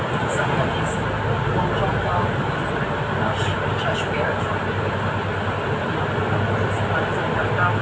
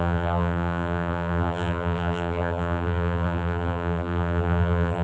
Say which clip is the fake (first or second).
second